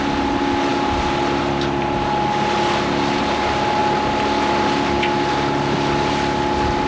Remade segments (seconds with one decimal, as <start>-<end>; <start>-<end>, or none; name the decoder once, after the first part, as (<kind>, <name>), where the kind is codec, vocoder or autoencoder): none